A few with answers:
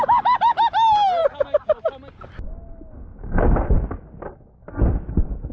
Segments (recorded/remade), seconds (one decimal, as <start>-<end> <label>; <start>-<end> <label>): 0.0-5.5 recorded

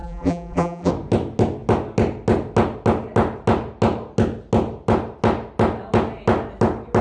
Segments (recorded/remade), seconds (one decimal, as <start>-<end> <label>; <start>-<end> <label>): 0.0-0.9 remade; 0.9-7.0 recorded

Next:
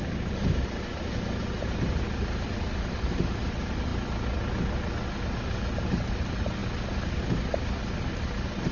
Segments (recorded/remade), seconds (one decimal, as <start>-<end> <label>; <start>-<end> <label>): 0.0-3.9 remade; 3.9-5.2 recorded; 5.2-6.6 remade; 6.6-8.1 recorded; 8.1-8.7 remade

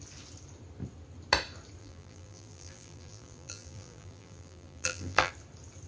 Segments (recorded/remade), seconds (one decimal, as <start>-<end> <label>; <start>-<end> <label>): 0.0-1.8 recorded; 1.8-5.3 remade; 5.3-5.9 recorded

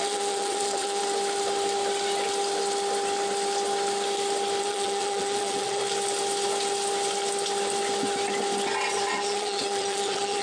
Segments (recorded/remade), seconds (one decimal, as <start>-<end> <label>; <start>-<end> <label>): 0.0-1.0 remade; 1.0-4.6 recorded; 4.6-5.8 remade; 5.8-9.1 recorded; 9.1-10.4 remade

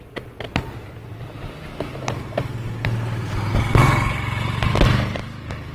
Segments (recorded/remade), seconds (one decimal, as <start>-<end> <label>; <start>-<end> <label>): 0.0-5.7 recorded

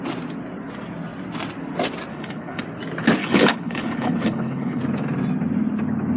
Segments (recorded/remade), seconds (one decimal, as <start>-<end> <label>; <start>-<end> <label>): 0.0-2.1 recorded; 2.1-2.6 remade; 2.6-3.2 recorded; 3.2-4.8 remade; 4.8-6.2 recorded